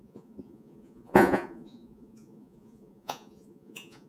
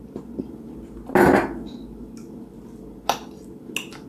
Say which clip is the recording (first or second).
second